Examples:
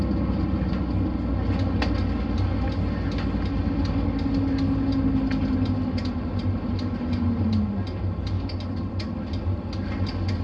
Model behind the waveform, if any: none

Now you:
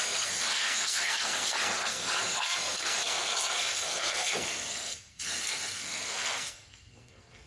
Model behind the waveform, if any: codec, SNAC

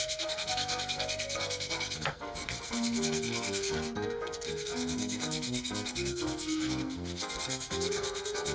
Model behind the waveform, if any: codec, SNAC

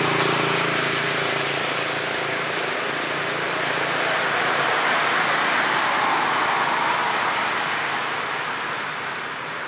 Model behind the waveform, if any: none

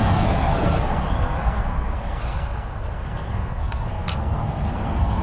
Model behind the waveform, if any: codec, SNAC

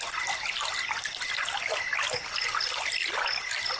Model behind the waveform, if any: none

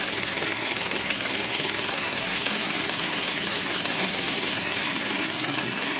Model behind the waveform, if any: codec, SNAC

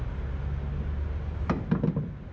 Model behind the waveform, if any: none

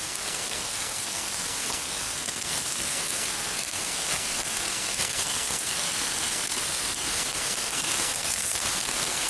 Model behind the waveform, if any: codec, SNAC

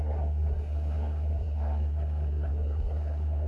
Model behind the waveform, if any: codec, SNAC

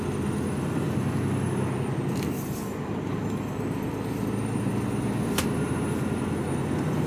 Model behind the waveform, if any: none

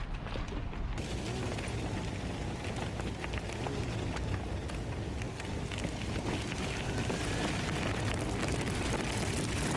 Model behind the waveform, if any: none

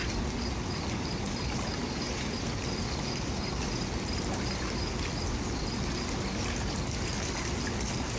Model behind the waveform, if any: none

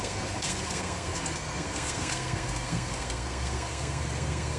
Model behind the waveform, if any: codec, SNAC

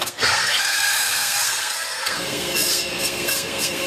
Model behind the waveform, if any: codec, SNAC